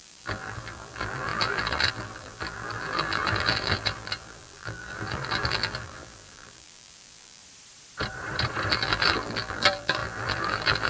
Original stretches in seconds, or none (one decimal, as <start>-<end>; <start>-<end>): 7.4-8.7